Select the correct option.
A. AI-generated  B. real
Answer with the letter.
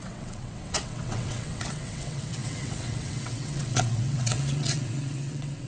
A